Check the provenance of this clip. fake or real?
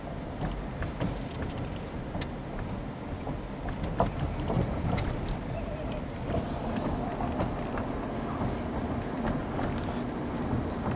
real